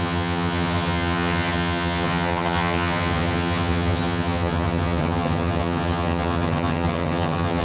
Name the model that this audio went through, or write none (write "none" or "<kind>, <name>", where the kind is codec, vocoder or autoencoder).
vocoder, HiFi-GAN